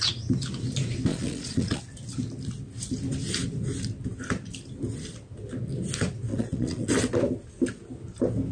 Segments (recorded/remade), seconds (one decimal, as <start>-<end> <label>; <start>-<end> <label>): 0.0-1.1 recorded; 1.1-1.8 remade; 1.8-6.3 recorded; 6.3-6.9 remade; 6.9-8.5 recorded